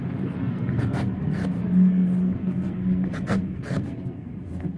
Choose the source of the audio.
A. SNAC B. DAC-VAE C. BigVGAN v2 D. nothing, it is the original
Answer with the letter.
A